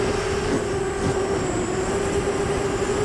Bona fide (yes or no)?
yes